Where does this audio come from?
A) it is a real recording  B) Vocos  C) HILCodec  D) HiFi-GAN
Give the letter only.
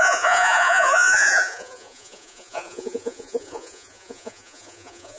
B